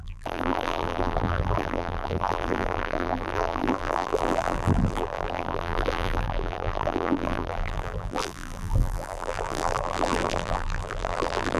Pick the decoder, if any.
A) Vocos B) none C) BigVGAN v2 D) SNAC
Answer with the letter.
C